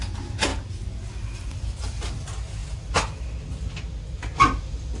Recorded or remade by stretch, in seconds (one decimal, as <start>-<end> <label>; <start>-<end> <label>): 0.0-5.0 recorded